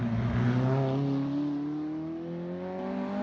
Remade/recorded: recorded